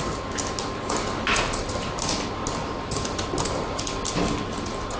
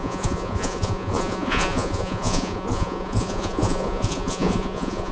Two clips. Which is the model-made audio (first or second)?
second